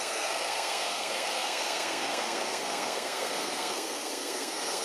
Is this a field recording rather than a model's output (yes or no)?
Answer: no